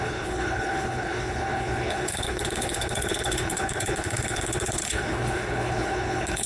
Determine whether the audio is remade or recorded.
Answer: remade